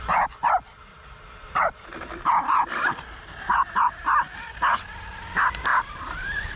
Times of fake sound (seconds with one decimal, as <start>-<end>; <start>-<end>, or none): 0.7-3.2; 5.7-6.6